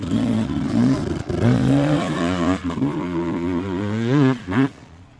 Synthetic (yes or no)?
yes